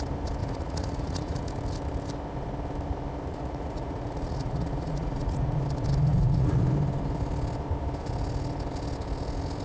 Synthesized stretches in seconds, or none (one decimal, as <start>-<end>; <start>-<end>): 0.4-1.5; 3.3-5.6; 6.1-6.6